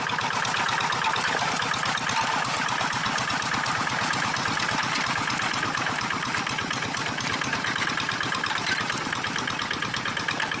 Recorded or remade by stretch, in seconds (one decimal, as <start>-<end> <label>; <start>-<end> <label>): 0.0-10.6 recorded